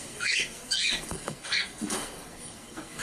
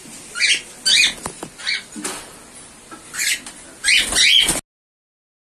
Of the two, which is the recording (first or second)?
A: second